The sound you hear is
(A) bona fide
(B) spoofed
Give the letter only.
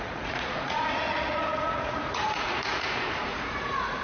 B